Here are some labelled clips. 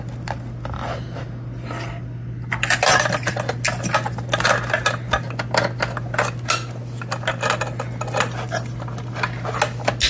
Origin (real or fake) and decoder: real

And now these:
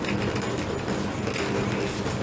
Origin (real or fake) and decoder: real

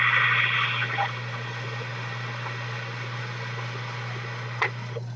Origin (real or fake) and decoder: real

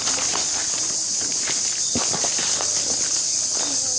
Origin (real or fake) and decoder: real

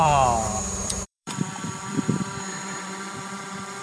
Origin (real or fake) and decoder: fake, vocoder, BigVGAN v2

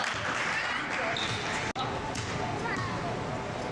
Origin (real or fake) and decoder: real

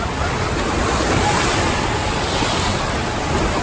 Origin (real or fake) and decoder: real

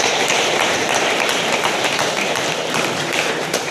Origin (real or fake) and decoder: fake, vocoder, BigVGAN v2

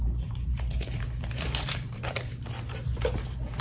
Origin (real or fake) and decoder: fake, vocoder, BigVGAN v2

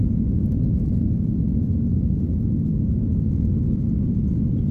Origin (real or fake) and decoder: real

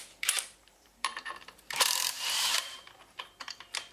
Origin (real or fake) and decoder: fake, vocoder, BigVGAN v2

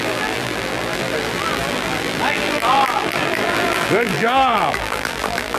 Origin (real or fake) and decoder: fake, vocoder, BigVGAN v2